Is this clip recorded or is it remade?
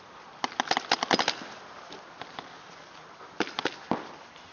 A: recorded